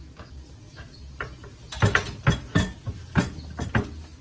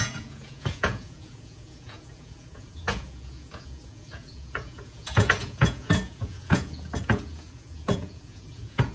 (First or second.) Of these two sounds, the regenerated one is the second